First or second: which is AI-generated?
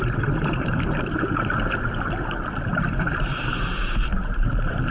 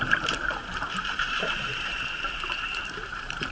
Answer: second